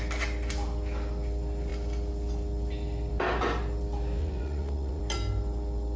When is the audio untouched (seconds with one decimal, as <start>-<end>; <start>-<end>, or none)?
0.0-4.2; 5.0-6.0